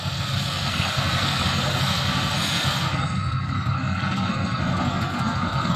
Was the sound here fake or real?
fake